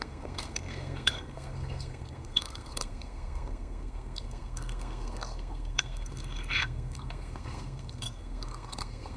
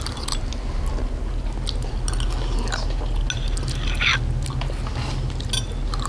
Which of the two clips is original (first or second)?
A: second